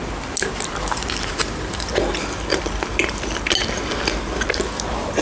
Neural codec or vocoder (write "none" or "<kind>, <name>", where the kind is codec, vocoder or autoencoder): none